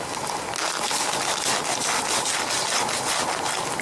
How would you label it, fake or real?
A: real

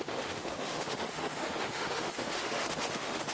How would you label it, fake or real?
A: fake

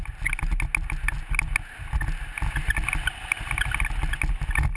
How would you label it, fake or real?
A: real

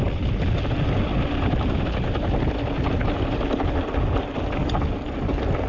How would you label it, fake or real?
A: real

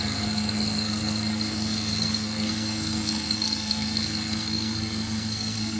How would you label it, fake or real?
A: fake